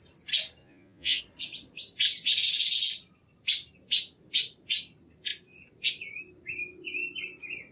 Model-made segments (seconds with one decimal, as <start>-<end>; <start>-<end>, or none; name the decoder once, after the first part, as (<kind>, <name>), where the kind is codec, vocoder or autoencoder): 0.6-1.2 (vocoder, Vocos)